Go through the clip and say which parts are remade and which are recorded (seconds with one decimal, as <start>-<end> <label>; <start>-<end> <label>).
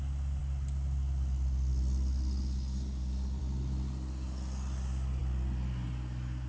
0.0-6.5 recorded